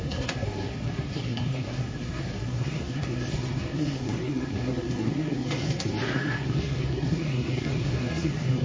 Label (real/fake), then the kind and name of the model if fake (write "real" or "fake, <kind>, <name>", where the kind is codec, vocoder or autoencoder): fake, codec, SNAC